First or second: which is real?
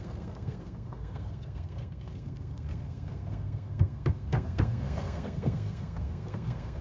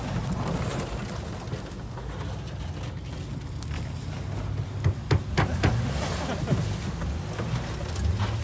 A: second